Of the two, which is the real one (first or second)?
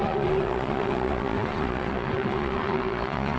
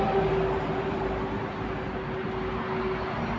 second